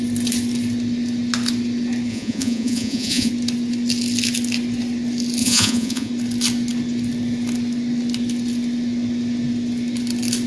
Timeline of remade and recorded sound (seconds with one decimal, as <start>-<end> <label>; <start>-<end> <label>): 0.0-2.1 recorded; 2.1-3.3 remade; 3.3-5.4 recorded; 5.4-6.1 remade; 6.1-10.5 recorded

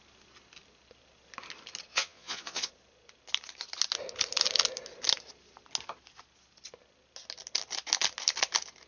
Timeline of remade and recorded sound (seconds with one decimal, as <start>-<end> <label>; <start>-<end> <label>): 0.0-1.9 recorded; 1.9-2.7 remade; 2.7-8.9 recorded

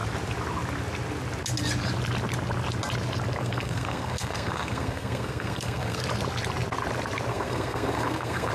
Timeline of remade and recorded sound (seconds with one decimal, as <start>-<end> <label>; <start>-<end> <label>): 0.0-3.4 recorded; 3.4-6.0 remade; 6.0-7.3 recorded; 7.3-8.5 remade

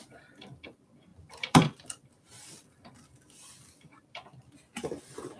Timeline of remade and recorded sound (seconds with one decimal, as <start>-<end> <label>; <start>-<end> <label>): 0.0-1.1 recorded; 1.1-3.6 remade; 3.6-4.7 recorded; 4.7-5.4 remade

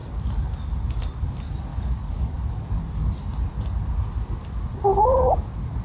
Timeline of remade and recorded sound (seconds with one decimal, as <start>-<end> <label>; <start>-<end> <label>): 0.0-1.7 recorded; 1.7-2.8 remade; 2.8-5.8 recorded

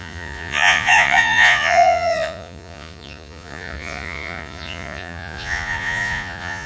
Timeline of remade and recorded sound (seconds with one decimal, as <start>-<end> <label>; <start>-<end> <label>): 0.0-6.7 remade

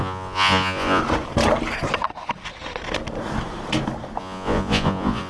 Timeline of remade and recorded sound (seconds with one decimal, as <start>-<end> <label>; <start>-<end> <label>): 0.0-1.0 remade; 1.0-4.2 recorded; 4.2-5.3 remade

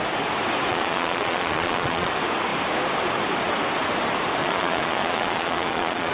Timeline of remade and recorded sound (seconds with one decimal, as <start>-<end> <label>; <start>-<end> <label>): 0.0-0.7 recorded; 0.7-2.1 remade; 2.1-4.4 recorded; 4.4-6.1 remade